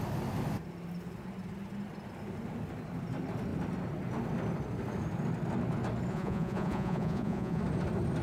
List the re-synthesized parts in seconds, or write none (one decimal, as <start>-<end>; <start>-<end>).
6.1-7.6